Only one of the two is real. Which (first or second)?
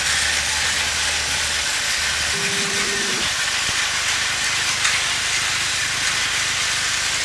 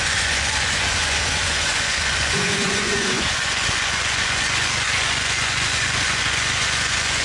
first